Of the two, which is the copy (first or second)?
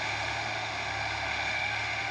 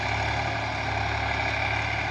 first